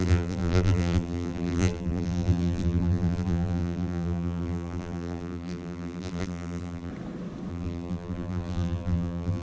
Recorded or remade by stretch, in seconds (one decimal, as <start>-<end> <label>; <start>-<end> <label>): 0.0-6.9 remade; 6.9-7.5 recorded; 7.5-9.4 remade